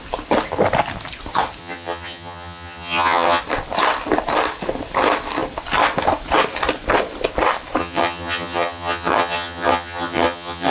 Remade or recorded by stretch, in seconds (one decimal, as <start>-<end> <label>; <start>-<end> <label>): 0.0-1.6 recorded; 1.6-3.4 remade; 3.4-7.8 recorded; 7.8-10.7 remade